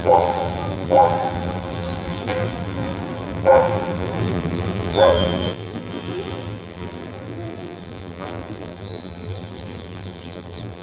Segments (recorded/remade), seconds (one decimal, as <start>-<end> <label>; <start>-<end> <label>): 0.0-10.8 remade